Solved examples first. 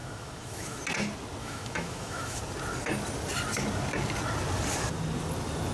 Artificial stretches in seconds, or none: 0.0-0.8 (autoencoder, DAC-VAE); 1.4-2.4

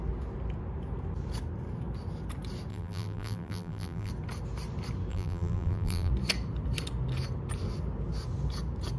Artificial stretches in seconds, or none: 2.7-4.1 (vocoder, BigVGAN v2); 5.1-6.1

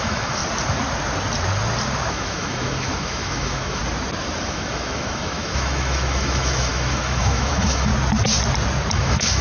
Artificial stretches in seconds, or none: 0.0-0.4 (autoencoder, DAC-VAE); 2.1-3.8; 4.4-7.9; 8.9-9.4

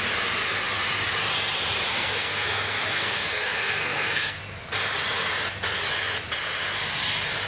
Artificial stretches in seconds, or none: 1.9-4.4 (codec, SNAC)

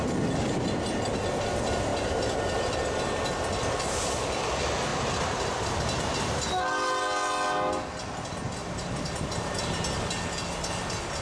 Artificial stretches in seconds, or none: 1.9-2.5 (vocoder, BigVGAN v2); 4.9-5.7; 8.6-9.6

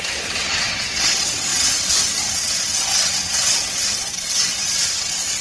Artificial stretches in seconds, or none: 0.0-5.4 (vocoder, WaveNeXt)

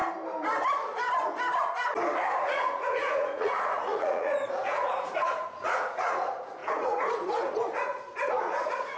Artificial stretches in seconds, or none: 2.4-9.0 (vocoder, Vocos)

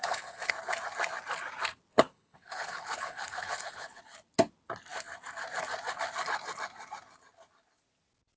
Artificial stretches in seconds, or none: 0.0-0.5 (codec, HILCodec); 1.9-4.0